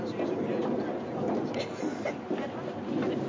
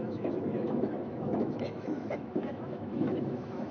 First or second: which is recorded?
first